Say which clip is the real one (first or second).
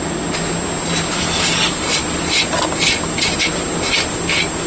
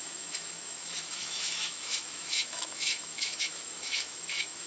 first